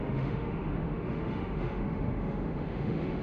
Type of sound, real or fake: fake